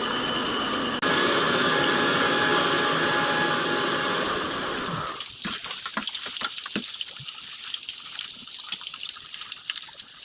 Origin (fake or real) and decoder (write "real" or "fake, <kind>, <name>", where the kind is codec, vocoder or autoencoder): real